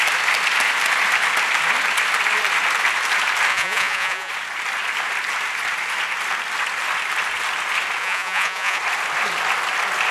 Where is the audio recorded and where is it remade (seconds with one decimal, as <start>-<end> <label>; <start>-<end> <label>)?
0.0-3.5 recorded; 3.5-4.3 remade; 4.3-8.0 recorded; 8.0-8.8 remade; 8.8-10.1 recorded